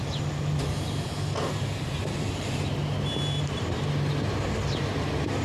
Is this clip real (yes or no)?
yes